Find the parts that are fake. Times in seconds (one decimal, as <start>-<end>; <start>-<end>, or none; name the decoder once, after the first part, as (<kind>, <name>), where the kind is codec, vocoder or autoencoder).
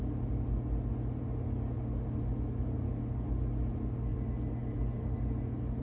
none